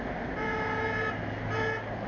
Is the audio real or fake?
real